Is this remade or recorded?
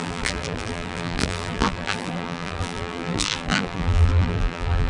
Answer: remade